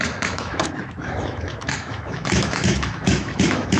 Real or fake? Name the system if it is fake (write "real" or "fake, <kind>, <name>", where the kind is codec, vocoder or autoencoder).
fake, autoencoder, DAC-VAE